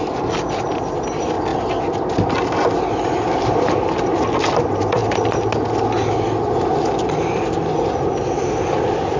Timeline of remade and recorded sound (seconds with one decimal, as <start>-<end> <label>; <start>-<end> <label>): 0.0-9.2 recorded